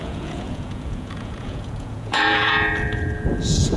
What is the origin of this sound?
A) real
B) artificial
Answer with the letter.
B